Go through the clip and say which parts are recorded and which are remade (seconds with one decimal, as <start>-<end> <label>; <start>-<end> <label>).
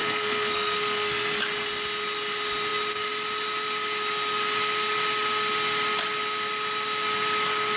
0.0-1.4 remade; 1.4-7.8 recorded